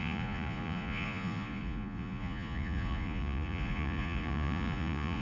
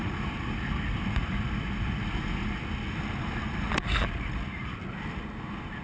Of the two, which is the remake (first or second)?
first